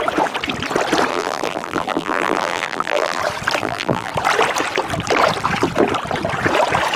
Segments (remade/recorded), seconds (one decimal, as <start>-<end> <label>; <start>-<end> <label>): 0.0-1.1 recorded; 1.1-3.2 remade; 3.2-3.6 recorded; 3.6-4.1 remade; 4.1-7.0 recorded